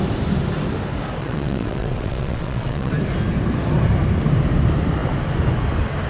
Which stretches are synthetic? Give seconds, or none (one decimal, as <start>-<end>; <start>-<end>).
1.2-2.9